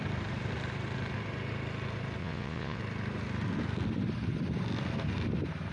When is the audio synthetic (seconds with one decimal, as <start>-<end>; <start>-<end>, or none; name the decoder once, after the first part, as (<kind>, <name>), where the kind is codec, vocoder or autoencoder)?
2.2-2.8 (vocoder, Vocos)